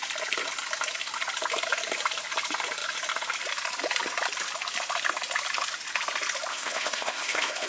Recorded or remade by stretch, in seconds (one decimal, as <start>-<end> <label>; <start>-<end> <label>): 0.0-6.5 recorded; 6.5-7.7 remade